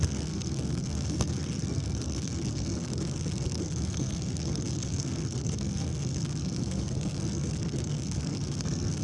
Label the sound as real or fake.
fake